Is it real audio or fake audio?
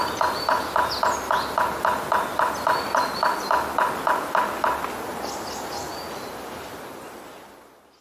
real